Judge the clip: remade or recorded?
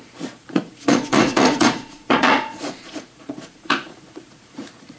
remade